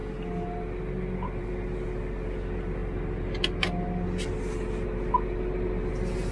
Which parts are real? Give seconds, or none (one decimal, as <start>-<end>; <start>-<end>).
0.0-6.3